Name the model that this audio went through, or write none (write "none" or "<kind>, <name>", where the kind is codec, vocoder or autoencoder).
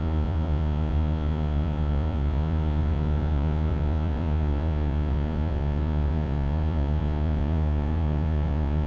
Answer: vocoder, Vocos